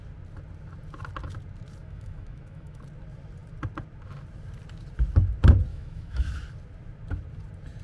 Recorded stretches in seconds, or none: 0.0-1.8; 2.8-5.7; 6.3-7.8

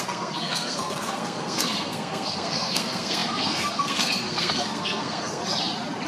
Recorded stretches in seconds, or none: 5.4-6.1

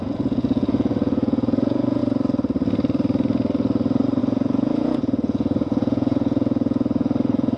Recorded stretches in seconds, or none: 2.0-4.2

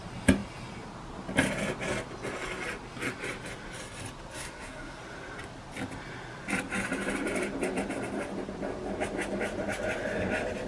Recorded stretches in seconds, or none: 0.0-4.3; 5.0-10.7

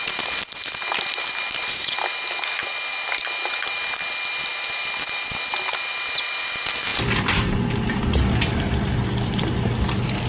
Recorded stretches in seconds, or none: 0.0-10.3

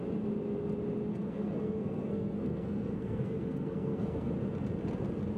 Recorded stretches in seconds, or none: 0.0-1.1; 4.3-5.4